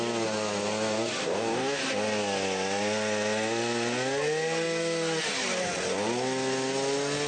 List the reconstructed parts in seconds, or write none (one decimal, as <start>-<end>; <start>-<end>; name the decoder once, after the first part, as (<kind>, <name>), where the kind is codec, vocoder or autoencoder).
1.2-1.8 (codec, DAC)